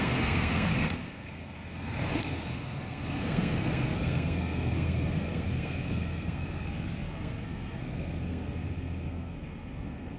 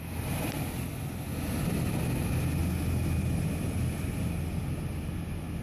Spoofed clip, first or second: first